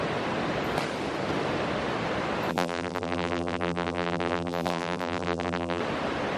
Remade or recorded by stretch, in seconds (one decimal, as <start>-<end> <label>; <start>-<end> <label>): 0.0-2.5 recorded; 2.5-5.8 remade; 5.8-6.4 recorded

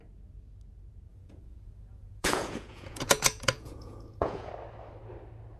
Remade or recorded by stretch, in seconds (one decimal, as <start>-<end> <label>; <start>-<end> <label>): 0.0-1.1 recorded; 1.1-4.5 remade; 4.5-5.6 recorded

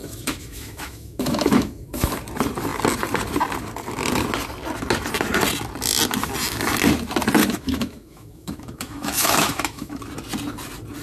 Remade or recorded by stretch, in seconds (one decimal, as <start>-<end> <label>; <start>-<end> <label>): 0.0-2.1 remade; 2.1-7.4 recorded; 7.4-10.0 remade; 10.0-11.0 recorded

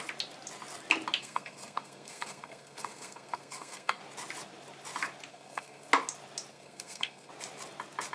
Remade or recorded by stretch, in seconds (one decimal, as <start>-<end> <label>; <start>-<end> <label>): 0.0-1.2 recorded; 1.2-4.0 remade; 4.0-5.3 recorded; 5.3-5.9 remade; 5.9-6.5 recorded; 6.5-7.3 remade; 7.3-8.1 recorded

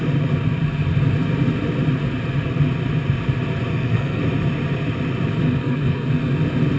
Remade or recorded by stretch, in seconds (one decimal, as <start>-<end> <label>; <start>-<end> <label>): 0.0-3.7 recorded; 3.7-4.2 remade; 4.2-5.6 recorded; 5.6-6.1 remade; 6.1-6.8 recorded

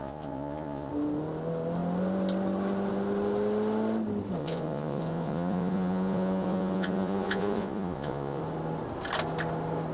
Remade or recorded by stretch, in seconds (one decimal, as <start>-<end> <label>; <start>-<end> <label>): 0.0-0.9 remade; 0.9-4.4 recorded; 4.4-8.4 remade; 8.4-9.9 recorded

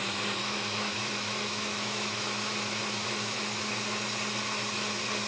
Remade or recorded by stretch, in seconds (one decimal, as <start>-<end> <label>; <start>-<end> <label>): 0.0-0.4 recorded; 0.4-3.6 remade; 3.6-5.3 recorded